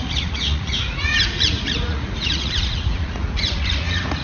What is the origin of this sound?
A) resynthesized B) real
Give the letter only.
A